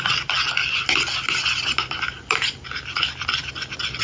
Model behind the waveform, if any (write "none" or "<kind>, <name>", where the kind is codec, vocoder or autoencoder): none